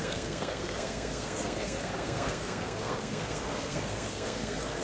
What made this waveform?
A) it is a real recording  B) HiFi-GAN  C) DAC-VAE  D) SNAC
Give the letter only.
D